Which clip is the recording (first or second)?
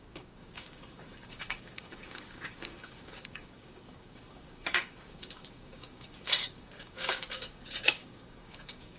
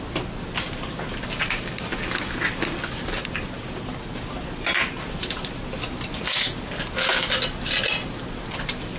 second